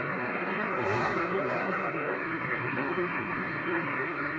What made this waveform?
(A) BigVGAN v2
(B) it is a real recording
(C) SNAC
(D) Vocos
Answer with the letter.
C